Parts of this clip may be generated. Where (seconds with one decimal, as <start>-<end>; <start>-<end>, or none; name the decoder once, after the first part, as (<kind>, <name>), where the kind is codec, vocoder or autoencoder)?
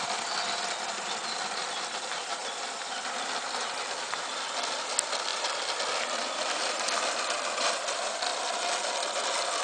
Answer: none